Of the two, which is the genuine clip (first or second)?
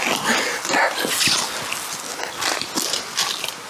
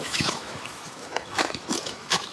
first